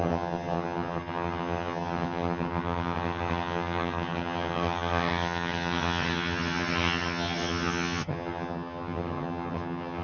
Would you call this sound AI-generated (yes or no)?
yes